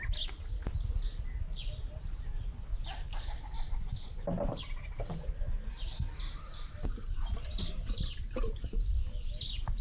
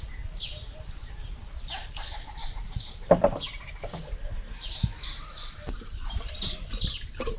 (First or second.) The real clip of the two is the first